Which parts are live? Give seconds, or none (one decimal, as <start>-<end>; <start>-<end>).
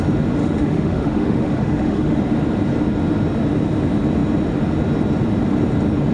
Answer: 0.0-0.4; 2.2-6.1